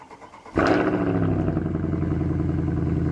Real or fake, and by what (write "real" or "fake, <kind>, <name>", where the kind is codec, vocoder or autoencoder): real